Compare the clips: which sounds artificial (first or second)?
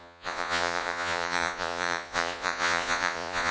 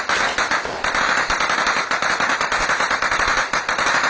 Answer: first